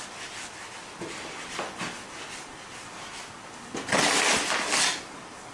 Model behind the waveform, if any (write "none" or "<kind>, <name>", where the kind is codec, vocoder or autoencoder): none